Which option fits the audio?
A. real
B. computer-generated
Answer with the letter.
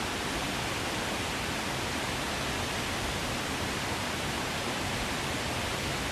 A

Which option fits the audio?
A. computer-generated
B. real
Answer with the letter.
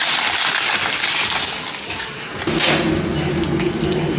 B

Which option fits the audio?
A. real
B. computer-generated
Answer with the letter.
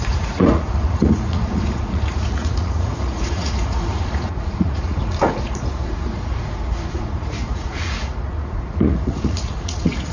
B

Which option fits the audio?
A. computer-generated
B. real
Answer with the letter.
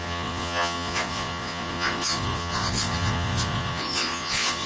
A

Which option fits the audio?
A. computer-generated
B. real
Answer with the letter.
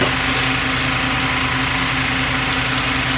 B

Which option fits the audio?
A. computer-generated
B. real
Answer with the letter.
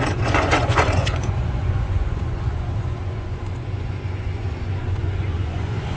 A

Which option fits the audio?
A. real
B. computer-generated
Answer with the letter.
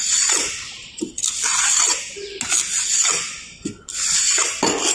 A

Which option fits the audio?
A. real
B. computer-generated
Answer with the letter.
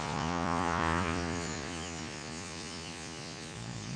B